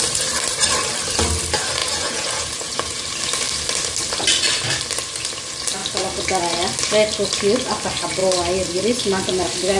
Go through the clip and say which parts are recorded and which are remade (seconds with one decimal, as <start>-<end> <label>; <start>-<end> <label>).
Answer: 0.0-1.8 recorded; 1.8-3.1 remade; 3.1-9.8 recorded